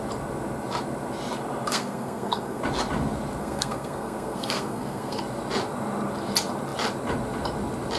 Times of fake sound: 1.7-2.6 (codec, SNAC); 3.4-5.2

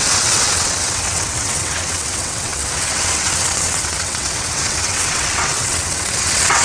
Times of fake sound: 0.0-6.6 (vocoder, WaveNeXt)

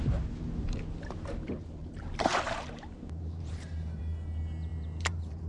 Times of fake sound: 1.8-4.0 (vocoder, BigVGAN v2); 4.7-5.5